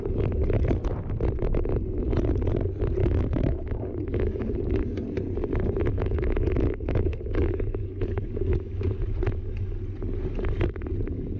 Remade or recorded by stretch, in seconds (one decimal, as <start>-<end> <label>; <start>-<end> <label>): 0.0-3.0 recorded; 3.0-4.8 remade; 4.8-5.9 recorded; 5.9-8.7 remade; 8.7-11.4 recorded